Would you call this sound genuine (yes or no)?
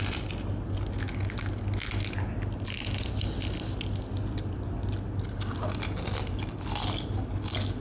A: yes